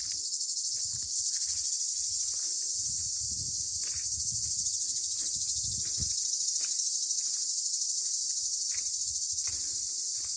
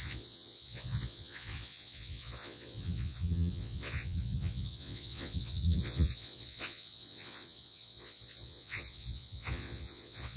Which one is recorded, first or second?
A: first